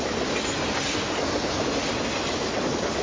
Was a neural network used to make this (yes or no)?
no